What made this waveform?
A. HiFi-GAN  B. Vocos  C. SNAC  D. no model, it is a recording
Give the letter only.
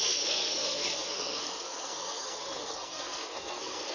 C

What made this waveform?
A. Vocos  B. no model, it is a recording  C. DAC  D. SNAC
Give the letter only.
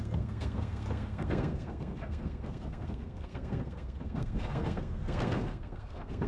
D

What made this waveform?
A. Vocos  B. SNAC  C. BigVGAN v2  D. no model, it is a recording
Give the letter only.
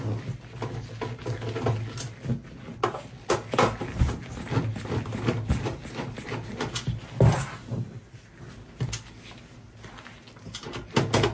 D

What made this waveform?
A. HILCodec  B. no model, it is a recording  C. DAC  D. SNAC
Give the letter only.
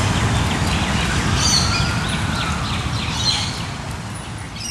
B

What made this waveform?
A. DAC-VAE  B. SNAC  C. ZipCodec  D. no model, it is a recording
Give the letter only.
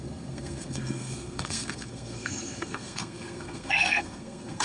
B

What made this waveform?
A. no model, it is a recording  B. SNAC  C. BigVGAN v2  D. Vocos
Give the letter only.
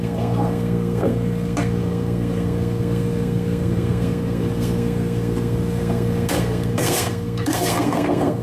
B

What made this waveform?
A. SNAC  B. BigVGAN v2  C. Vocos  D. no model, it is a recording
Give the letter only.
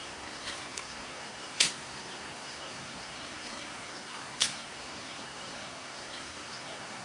A